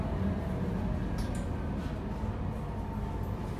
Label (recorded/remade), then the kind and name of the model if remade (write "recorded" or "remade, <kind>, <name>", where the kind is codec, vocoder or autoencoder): recorded